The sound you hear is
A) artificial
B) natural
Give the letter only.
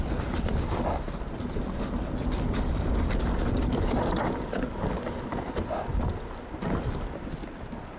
B